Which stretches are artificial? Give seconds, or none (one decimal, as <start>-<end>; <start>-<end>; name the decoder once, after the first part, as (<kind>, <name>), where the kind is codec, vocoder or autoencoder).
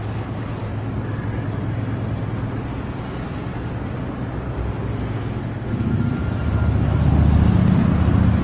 none